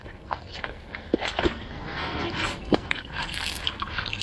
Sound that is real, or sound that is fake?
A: fake